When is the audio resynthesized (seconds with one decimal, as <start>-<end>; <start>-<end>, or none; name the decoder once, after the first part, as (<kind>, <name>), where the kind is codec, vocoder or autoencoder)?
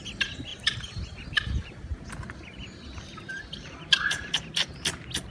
0.5-2.1 (vocoder, BigVGAN v2); 3.3-4.3